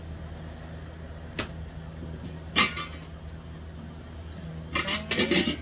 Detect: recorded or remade recorded